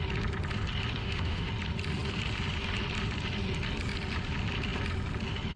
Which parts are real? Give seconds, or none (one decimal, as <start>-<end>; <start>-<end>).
0.0-1.0; 1.5-5.6